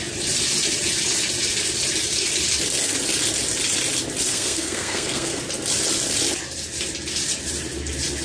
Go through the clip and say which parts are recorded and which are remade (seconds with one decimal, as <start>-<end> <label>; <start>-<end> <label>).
0.0-4.3 recorded; 4.3-5.4 remade; 5.4-8.2 recorded